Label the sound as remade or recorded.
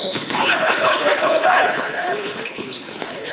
remade